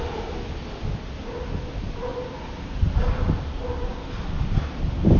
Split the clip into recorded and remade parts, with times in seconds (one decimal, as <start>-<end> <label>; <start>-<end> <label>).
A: 0.0-5.2 recorded